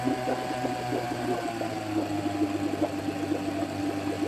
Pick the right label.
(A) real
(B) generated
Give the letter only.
A